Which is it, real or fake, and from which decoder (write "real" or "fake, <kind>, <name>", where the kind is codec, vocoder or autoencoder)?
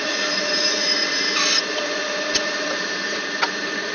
fake, vocoder, Vocos